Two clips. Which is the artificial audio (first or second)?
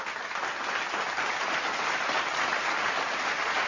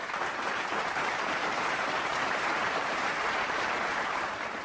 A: second